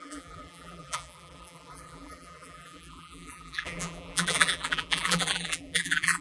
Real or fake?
fake